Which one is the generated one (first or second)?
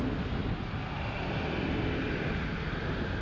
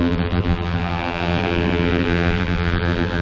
second